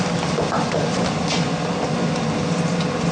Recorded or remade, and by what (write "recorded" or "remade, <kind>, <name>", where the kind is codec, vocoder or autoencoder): recorded